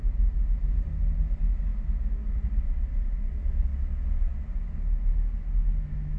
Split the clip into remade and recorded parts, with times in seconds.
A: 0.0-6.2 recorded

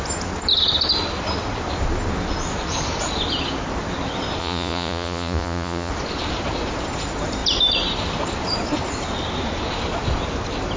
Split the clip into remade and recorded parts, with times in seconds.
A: 0.0-4.4 recorded; 4.4-5.9 remade; 5.9-10.8 recorded